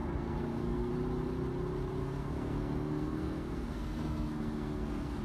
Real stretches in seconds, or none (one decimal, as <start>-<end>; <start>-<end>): 0.9-2.0